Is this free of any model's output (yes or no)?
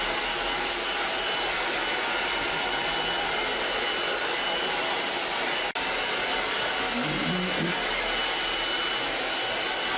yes